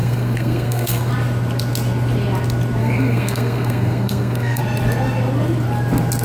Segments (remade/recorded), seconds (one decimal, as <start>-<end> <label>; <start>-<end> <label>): 0.0-1.1 remade; 1.1-2.8 recorded; 2.8-4.6 remade; 4.6-6.2 recorded